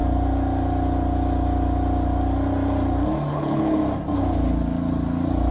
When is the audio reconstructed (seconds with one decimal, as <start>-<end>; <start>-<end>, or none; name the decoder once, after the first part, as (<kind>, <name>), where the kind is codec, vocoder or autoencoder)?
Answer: 3.3-3.8 (codec, HILCodec)